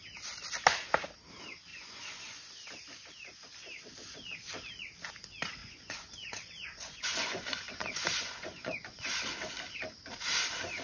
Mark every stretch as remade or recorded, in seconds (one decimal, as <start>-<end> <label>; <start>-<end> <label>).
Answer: 0.0-1.7 recorded; 1.7-2.4 remade; 2.4-5.6 recorded; 5.6-9.1 remade; 9.1-10.8 recorded